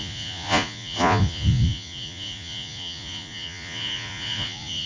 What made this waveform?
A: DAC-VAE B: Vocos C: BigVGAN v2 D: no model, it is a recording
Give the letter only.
B